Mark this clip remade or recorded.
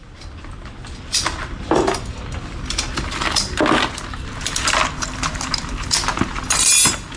recorded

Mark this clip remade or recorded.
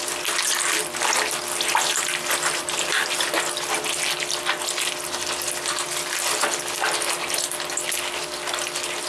recorded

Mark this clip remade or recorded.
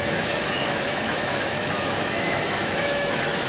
remade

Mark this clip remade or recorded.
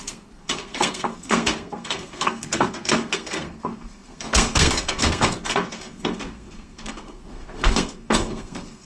remade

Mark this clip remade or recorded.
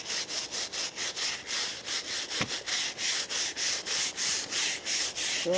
recorded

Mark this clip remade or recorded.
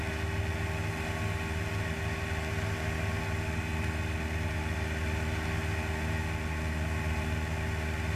recorded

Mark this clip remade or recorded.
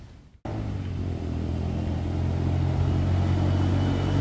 recorded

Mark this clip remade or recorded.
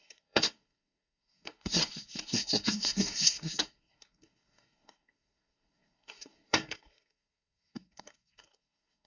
remade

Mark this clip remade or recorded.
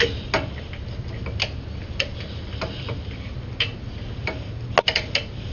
recorded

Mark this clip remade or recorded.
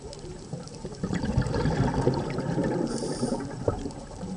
remade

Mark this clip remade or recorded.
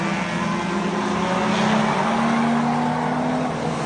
recorded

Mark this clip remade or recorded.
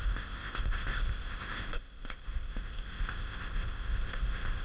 remade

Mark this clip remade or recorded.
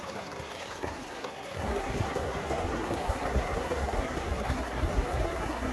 remade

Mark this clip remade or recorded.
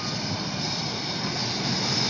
recorded